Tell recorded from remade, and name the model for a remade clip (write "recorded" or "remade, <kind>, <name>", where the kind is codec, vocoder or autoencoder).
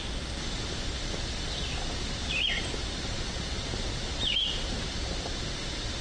recorded